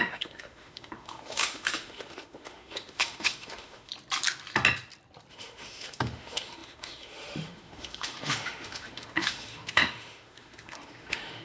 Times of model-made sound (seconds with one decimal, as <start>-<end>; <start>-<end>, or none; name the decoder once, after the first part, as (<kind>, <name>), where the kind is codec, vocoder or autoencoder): 0.0-3.9 (autoencoder, DAC-VAE); 5.3-11.4